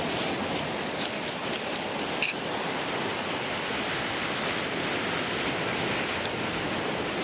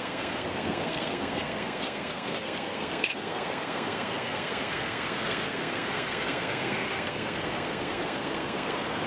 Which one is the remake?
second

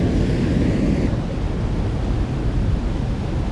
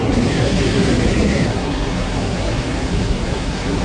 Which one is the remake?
second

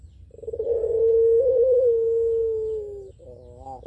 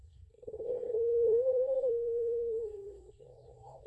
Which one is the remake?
second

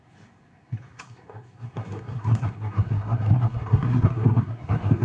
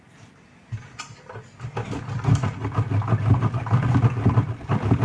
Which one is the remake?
first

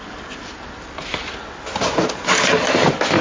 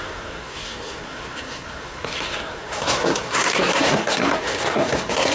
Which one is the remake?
second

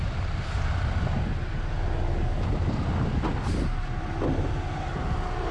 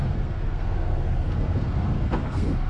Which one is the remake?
second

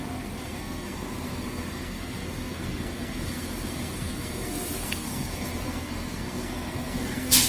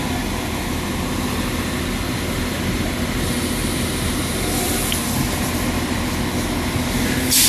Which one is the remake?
first